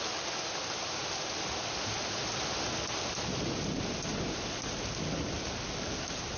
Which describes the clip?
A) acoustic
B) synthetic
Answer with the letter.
A